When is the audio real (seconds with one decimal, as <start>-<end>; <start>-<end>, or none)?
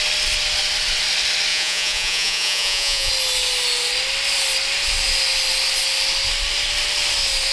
0.0-1.5; 3.1-7.5